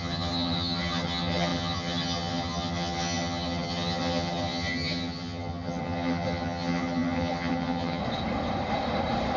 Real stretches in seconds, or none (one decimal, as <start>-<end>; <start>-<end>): 8.0-9.4